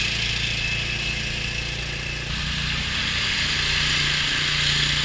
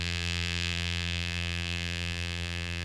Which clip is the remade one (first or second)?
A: second